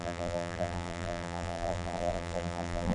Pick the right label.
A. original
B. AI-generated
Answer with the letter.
B